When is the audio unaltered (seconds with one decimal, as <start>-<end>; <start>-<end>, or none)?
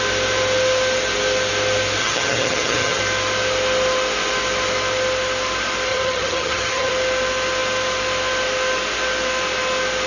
0.0-2.0; 3.0-5.9; 6.9-10.1